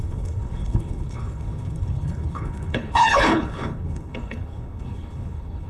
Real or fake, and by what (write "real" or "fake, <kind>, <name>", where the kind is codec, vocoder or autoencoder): fake, codec, HILCodec